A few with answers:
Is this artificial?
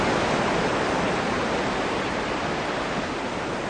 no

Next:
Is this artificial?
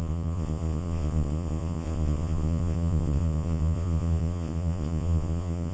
yes